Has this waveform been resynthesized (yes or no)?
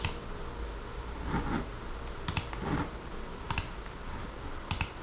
no